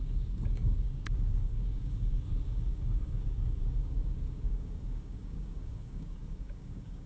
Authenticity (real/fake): fake